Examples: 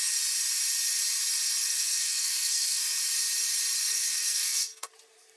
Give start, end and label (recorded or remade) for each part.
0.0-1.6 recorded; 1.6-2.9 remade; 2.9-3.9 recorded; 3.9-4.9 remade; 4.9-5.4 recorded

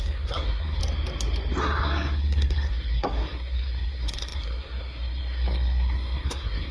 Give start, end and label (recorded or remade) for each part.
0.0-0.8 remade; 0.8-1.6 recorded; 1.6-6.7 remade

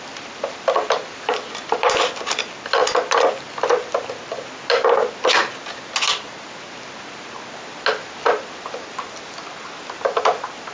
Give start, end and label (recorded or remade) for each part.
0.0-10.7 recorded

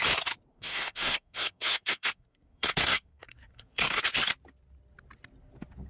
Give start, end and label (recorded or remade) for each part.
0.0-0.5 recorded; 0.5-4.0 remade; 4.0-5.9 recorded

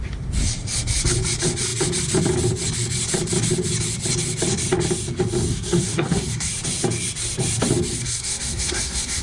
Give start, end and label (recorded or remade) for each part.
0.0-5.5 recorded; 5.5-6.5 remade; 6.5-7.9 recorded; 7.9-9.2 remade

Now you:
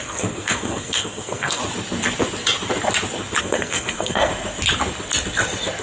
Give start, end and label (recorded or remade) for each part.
0.0-1.6 remade; 1.6-3.4 recorded; 3.4-4.3 remade; 4.3-5.8 recorded

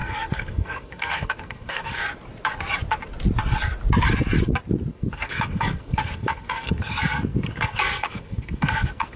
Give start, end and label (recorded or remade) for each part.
0.0-2.0 remade; 2.0-4.9 recorded; 4.9-9.2 remade